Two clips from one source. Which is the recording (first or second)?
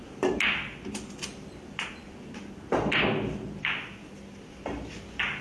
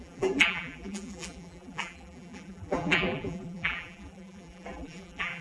first